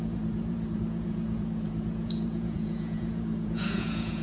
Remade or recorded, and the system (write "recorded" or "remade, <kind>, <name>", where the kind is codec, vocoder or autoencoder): remade, vocoder, Vocos